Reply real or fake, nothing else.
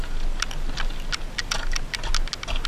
real